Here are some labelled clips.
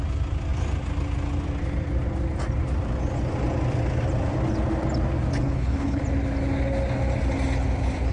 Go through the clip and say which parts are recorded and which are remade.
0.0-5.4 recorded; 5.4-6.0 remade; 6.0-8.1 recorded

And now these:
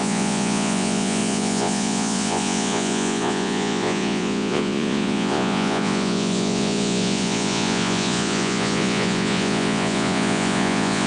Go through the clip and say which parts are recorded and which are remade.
0.0-11.1 remade

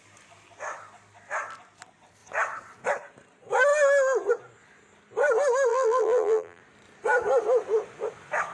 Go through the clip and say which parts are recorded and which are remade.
0.0-5.7 recorded; 5.7-6.6 remade; 6.6-8.5 recorded

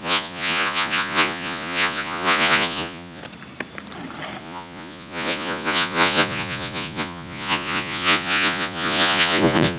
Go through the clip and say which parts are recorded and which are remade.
0.0-3.2 remade; 3.2-4.4 recorded; 4.4-9.8 remade

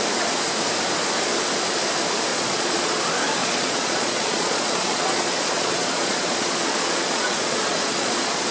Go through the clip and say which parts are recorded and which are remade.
0.0-2.3 recorded; 2.3-3.0 remade; 3.0-3.4 recorded; 3.4-8.5 remade

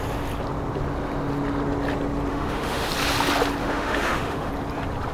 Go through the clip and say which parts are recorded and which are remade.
0.0-2.3 recorded; 2.3-2.9 remade; 2.9-3.6 recorded; 3.6-4.5 remade; 4.5-5.1 recorded

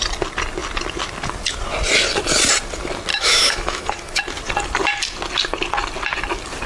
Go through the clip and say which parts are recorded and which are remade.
0.0-3.1 recorded; 3.1-4.2 remade; 4.2-6.7 recorded